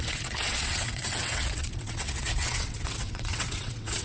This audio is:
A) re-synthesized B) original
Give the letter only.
A